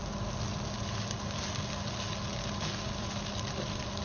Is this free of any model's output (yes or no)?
yes